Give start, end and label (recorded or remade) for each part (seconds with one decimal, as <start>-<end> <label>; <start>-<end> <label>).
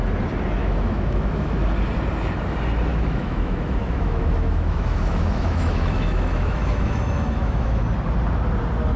0.0-0.6 recorded; 0.6-1.7 remade; 1.7-2.9 recorded; 2.9-7.8 remade; 7.8-9.0 recorded